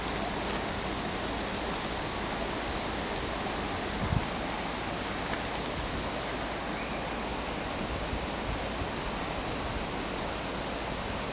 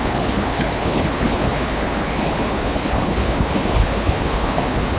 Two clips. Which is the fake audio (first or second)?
second